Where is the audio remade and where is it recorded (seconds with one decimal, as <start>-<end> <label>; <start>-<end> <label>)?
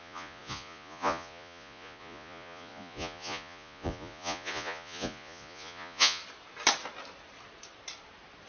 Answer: 0.0-6.2 remade; 6.2-8.5 recorded